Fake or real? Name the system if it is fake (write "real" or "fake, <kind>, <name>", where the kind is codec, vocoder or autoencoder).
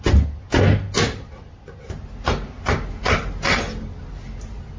real